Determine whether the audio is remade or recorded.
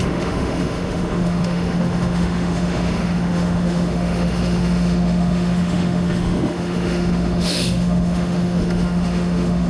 remade